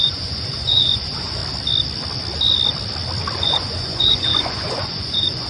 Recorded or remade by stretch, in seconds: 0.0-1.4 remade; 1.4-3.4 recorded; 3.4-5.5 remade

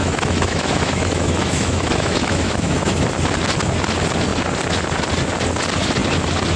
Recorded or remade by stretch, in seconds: 0.0-3.1 remade; 3.1-6.6 recorded

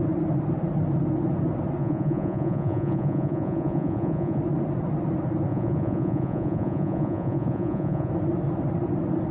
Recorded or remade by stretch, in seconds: 0.0-1.8 recorded; 1.8-4.4 remade; 4.4-5.5 recorded; 5.5-8.1 remade; 8.1-9.3 recorded

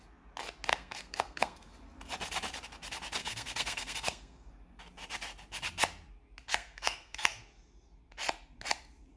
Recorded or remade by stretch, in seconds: 0.0-0.7 recorded; 0.7-1.7 remade; 1.7-3.2 recorded; 3.2-4.5 remade; 4.5-6.5 recorded; 6.5-7.4 remade; 7.4-9.2 recorded

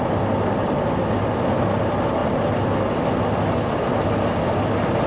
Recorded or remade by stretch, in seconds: 0.0-5.1 recorded

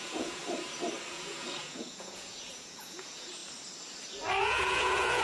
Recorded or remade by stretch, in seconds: 0.0-0.4 remade; 0.4-1.1 recorded; 1.1-3.4 remade; 3.4-4.4 recorded; 4.4-5.2 remade

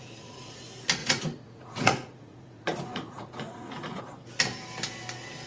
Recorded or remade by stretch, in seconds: 0.0-0.6 remade; 0.6-1.0 recorded; 1.0-4.0 remade; 4.0-5.5 recorded